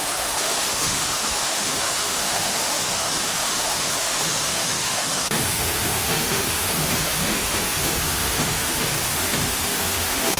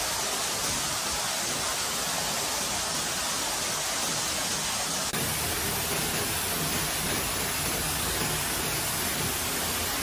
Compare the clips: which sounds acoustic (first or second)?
second